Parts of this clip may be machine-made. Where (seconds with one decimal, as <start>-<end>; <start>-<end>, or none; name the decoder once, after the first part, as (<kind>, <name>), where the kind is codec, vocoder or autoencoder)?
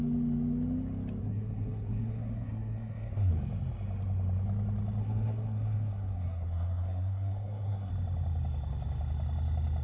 1.2-3.3 (codec, SNAC); 5.0-7.9